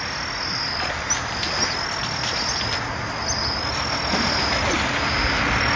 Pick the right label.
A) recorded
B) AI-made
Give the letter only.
A